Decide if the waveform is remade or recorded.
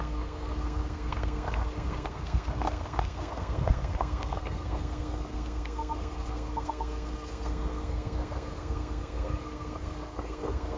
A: remade